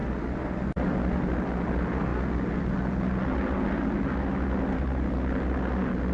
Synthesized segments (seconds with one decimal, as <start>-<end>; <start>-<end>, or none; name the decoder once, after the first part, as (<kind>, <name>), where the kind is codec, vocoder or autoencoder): none

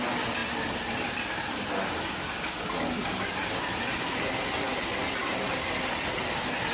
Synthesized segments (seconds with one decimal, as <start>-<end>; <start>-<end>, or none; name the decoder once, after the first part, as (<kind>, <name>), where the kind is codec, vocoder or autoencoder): none

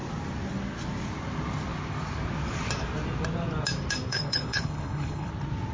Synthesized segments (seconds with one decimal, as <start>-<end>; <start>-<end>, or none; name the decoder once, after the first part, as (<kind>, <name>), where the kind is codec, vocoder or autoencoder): 4.1-5.3 (codec, HILCodec)